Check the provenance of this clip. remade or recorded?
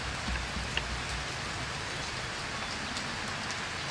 recorded